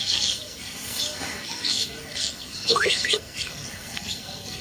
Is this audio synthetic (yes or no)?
yes